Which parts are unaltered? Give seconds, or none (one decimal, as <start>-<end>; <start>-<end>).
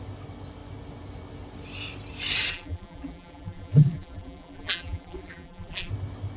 0.0-2.5; 5.9-6.4